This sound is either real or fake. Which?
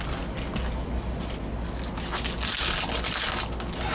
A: real